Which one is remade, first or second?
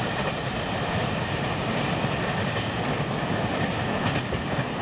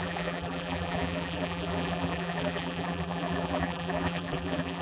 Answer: second